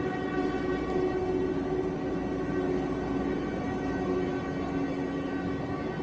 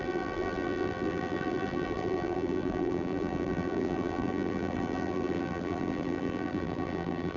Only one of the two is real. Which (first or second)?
first